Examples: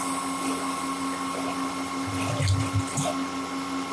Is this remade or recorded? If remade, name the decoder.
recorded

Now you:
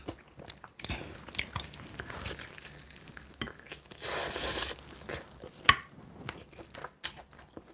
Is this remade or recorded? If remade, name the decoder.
recorded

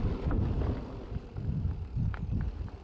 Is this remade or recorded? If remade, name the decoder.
recorded